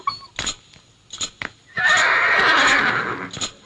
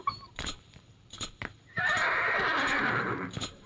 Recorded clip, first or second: first